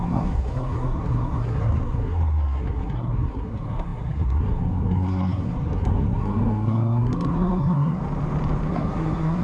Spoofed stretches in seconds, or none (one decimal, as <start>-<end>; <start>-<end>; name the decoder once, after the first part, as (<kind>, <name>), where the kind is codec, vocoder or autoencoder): 0.0-8.0 (codec, SNAC); 8.7-9.4